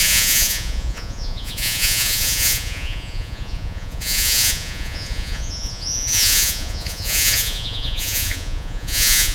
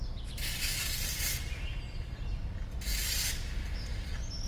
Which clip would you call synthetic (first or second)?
first